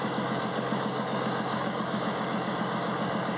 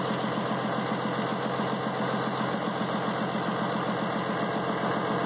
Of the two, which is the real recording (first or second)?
second